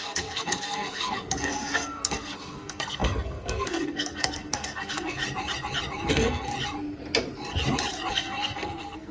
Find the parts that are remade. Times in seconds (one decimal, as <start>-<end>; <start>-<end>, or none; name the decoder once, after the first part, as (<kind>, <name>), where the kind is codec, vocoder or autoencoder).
0.0-5.2 (codec, SNAC); 6.1-6.5; 8.1-9.1